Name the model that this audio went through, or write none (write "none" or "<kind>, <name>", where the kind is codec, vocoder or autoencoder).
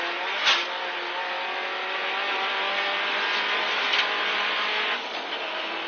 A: none